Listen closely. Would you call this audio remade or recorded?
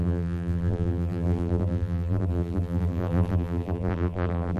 remade